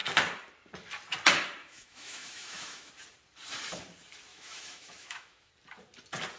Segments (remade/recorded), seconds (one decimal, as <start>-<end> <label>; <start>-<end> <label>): 0.0-1.6 recorded; 1.6-2.9 remade; 2.9-4.3 recorded; 4.3-5.5 remade; 5.5-6.4 recorded